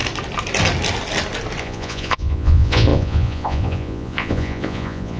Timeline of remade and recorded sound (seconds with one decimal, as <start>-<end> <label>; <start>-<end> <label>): 0.0-1.6 recorded; 1.6-5.2 remade